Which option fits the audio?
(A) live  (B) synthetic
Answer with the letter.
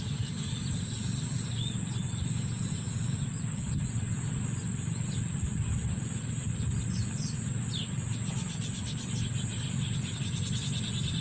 A